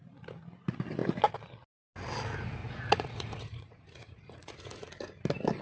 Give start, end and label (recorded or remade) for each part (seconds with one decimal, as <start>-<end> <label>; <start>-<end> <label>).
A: 0.0-2.6 recorded; 2.6-4.9 remade; 4.9-5.6 recorded